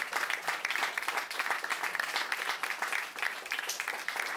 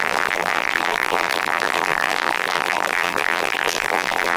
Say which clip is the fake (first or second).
second